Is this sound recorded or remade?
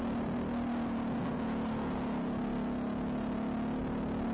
recorded